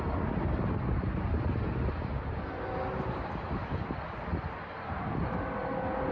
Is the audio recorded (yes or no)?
yes